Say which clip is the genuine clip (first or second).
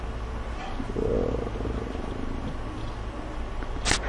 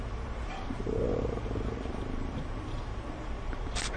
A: first